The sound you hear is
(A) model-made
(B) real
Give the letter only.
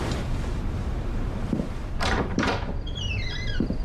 A